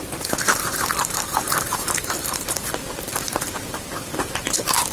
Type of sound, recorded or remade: remade